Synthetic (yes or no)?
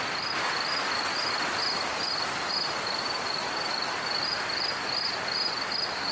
no